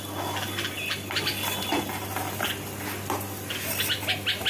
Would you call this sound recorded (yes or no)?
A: yes